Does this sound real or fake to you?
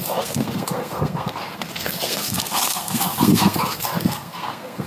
fake